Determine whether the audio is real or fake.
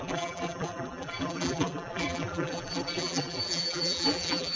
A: fake